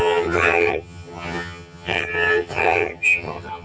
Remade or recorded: remade